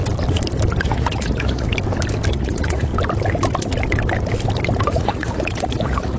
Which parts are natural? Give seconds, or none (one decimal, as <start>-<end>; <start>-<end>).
0.0-0.8; 1.7-2.3; 2.9-4.9